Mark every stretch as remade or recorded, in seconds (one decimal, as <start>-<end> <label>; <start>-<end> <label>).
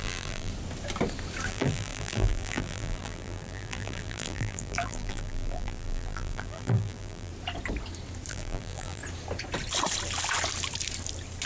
0.0-0.5 remade; 0.5-1.5 recorded; 1.5-7.3 remade; 7.3-8.3 recorded; 8.3-9.0 remade; 9.0-11.5 recorded